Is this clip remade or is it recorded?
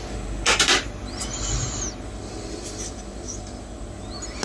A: recorded